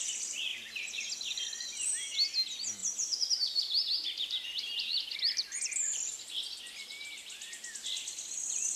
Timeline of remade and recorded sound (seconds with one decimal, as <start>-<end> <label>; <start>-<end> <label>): 0.0-0.5 recorded; 0.5-1.1 remade; 1.1-2.8 recorded; 2.8-6.6 remade; 6.6-8.8 recorded